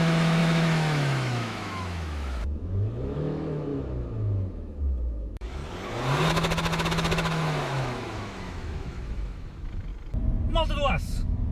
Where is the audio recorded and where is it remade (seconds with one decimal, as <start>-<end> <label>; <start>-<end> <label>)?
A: 0.0-5.6 remade; 5.6-6.3 recorded; 6.3-9.9 remade; 9.9-10.9 recorded; 10.9-11.5 remade

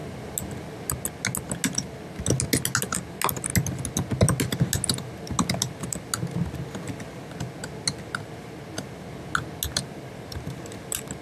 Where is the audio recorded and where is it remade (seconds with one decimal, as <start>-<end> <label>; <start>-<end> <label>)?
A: 0.0-11.2 recorded

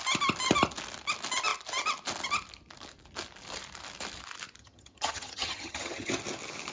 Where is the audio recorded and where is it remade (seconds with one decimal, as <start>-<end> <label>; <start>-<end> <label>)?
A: 0.0-4.6 recorded; 4.6-6.1 remade; 6.1-6.7 recorded

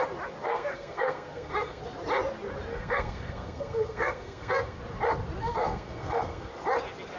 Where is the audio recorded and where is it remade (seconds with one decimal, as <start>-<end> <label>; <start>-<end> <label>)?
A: 0.0-0.4 recorded; 0.4-1.8 remade; 1.8-2.7 recorded; 2.7-4.8 remade; 4.8-5.4 recorded; 5.4-6.5 remade; 6.5-7.2 recorded

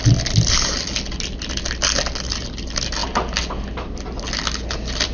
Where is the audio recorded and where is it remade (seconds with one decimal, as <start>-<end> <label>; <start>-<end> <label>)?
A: 0.0-5.1 recorded

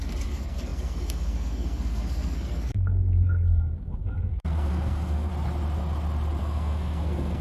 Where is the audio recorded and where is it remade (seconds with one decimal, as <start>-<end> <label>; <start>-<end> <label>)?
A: 0.0-5.3 remade; 5.3-6.4 recorded; 6.4-7.4 remade